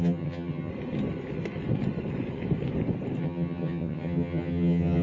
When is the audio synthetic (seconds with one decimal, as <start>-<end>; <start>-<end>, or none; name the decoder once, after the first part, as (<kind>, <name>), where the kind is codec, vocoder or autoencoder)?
0.0-0.7 (vocoder, HiFi-GAN); 3.2-5.0